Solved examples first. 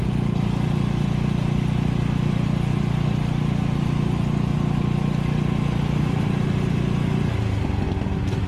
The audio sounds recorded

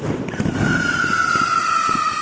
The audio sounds remade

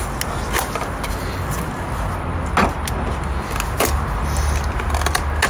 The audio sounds recorded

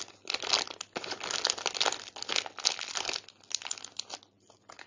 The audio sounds recorded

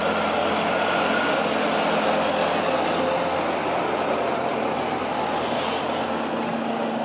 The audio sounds recorded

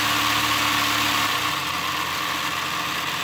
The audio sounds recorded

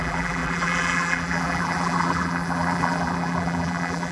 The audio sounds remade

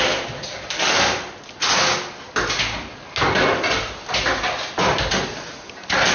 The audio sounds recorded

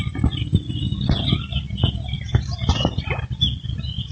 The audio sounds recorded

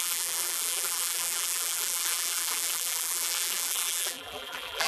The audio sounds remade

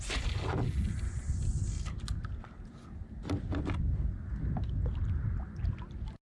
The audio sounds recorded